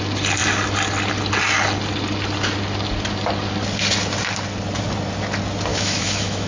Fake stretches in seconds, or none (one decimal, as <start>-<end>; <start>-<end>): 5.7-6.5